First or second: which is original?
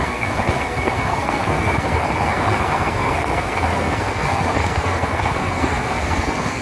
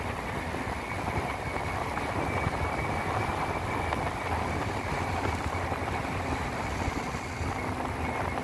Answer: second